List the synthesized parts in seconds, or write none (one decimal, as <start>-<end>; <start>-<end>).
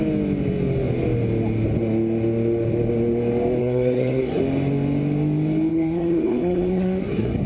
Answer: 3.6-4.4; 5.7-7.5